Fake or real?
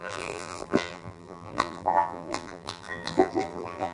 fake